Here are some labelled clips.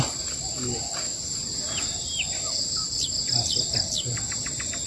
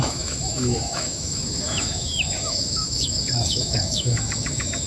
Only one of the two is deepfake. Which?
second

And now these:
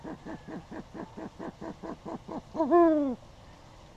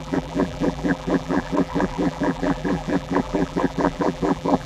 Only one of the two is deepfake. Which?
second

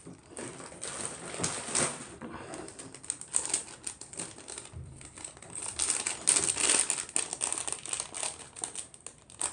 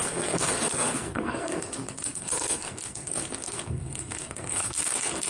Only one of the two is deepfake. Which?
second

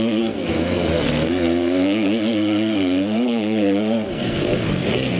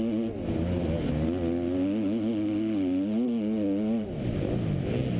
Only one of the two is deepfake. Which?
first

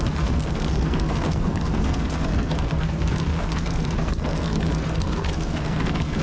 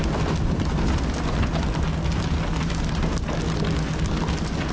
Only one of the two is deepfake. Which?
first